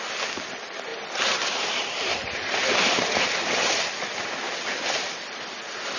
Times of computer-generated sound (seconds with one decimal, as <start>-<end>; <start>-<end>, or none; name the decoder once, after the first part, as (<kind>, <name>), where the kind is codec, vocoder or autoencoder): none